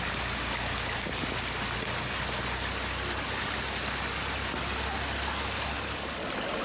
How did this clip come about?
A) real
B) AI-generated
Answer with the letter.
A